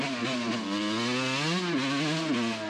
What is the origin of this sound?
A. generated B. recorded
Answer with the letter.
B